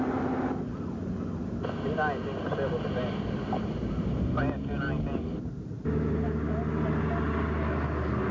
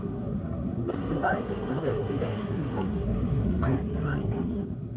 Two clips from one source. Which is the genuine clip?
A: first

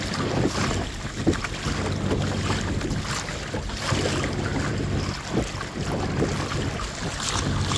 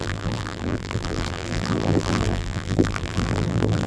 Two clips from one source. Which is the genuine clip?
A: first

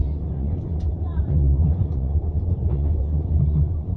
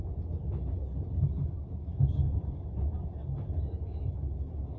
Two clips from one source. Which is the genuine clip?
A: second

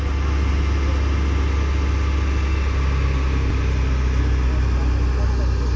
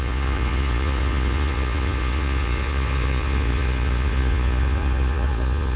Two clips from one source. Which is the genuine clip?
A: first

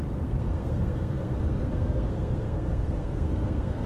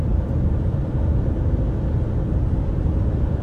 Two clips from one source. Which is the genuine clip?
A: second